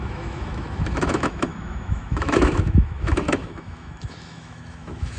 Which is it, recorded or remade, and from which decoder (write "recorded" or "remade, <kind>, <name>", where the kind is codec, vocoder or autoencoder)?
remade, autoencoder, DAC-VAE